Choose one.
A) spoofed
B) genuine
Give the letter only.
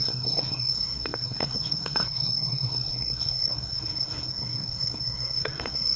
A